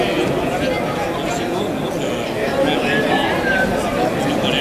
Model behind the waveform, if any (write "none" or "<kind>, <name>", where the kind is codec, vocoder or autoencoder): none